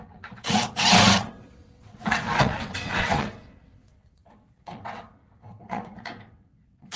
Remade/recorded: remade